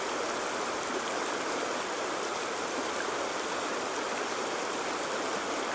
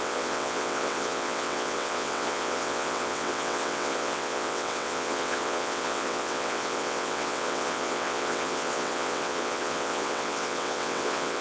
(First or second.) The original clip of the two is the first